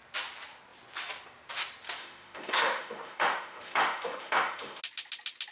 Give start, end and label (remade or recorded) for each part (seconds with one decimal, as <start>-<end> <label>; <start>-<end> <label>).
0.0-2.0 recorded; 2.0-4.8 remade; 4.8-5.5 recorded